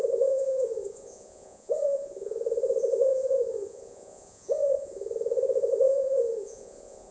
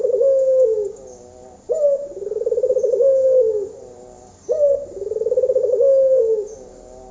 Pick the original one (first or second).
second